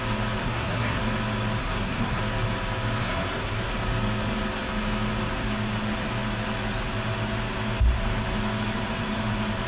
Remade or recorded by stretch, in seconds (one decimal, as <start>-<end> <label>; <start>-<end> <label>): 0.0-0.4 recorded; 0.4-1.0 remade; 1.0-1.6 recorded; 1.6-2.2 remade; 2.2-3.0 recorded; 3.0-3.7 remade; 3.7-9.7 recorded